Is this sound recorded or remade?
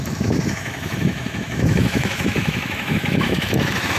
remade